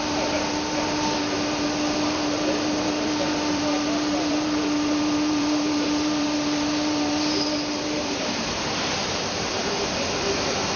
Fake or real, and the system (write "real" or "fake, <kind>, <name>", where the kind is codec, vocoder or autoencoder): fake, vocoder, BigVGAN v2